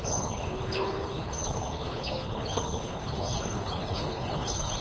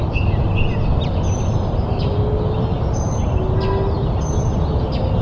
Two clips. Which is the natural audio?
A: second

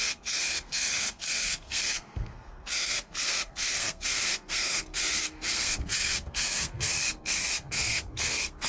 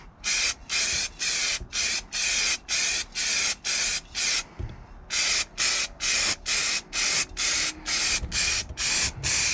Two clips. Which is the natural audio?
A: second